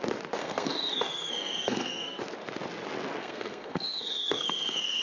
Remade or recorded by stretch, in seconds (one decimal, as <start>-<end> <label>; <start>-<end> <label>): 0.0-0.4 recorded; 0.4-2.2 remade; 2.2-3.2 recorded; 3.2-5.0 remade